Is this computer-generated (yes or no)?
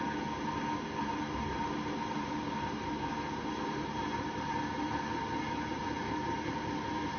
yes